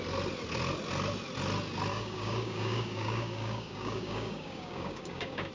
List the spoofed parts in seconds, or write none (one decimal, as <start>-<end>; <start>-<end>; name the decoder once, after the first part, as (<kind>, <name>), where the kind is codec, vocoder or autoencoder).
1.9-5.5 (codec, DAC)